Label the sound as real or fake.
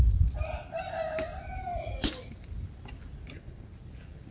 fake